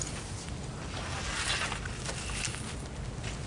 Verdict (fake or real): real